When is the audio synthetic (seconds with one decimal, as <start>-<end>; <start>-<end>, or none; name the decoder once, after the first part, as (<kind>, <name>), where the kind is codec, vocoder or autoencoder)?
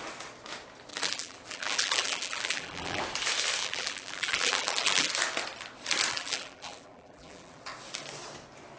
0.9-3.0 (vocoder, BigVGAN v2); 3.6-5.1; 6.1-7.6